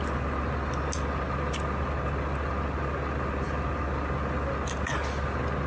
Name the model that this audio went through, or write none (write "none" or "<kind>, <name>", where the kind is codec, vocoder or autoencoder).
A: none